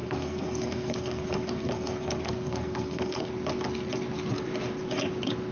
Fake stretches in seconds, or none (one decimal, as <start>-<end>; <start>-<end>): 0.0-3.3